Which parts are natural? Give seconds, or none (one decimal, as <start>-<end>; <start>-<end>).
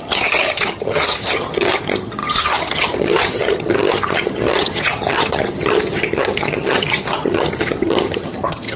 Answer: none